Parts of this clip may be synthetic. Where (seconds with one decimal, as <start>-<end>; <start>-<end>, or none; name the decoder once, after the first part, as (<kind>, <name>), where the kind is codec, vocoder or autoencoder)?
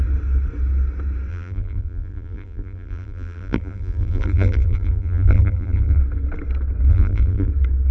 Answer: 1.3-6.0 (vocoder, BigVGAN v2); 6.9-7.5